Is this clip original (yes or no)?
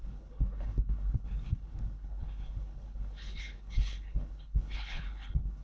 no